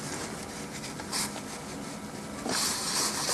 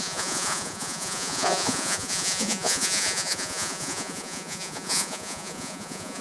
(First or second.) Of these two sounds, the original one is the first